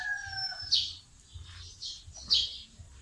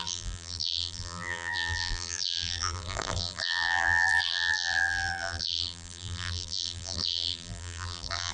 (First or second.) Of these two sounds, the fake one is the second